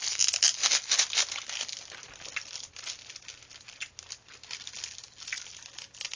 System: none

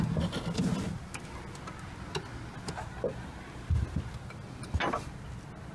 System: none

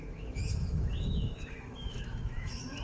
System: autoencoder, DAC-VAE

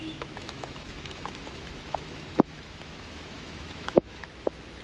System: autoencoder, DAC-VAE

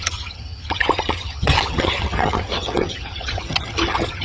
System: vocoder, HiFi-GAN